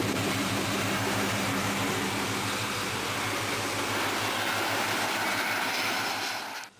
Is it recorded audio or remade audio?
recorded